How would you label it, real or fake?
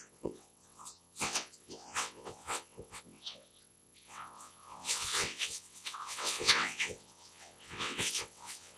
fake